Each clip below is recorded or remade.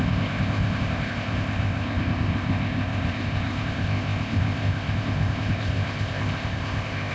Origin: remade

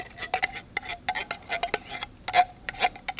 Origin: recorded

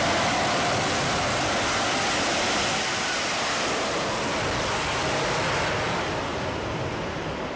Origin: recorded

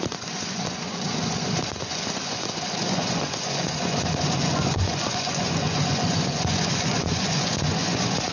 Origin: remade